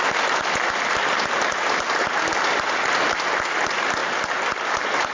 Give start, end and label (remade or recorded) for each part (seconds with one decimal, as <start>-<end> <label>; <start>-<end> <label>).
0.0-5.1 recorded